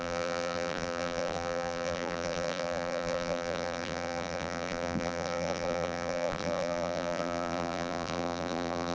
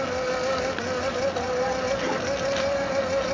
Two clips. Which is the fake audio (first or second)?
first